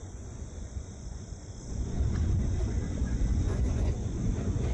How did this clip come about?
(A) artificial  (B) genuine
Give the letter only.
A